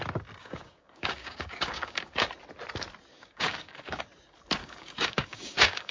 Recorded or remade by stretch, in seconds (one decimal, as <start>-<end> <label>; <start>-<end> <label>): 0.0-0.4 recorded; 0.4-2.3 remade; 2.3-3.1 recorded; 3.1-4.0 remade; 4.0-4.6 recorded; 4.6-5.9 remade